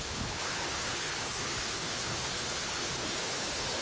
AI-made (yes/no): yes